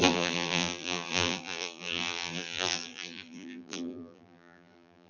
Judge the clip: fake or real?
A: fake